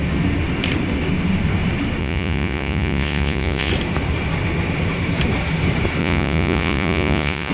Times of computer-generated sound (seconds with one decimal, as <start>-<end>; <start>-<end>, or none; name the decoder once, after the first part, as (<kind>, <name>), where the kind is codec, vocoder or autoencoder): 2.0-3.7 (vocoder, Vocos); 6.0-7.5